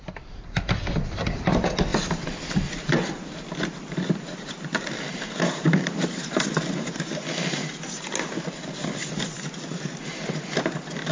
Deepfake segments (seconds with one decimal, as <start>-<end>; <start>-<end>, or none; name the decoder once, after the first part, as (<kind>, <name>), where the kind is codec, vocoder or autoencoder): 1.9-6.2 (vocoder, BigVGAN v2); 8.8-9.8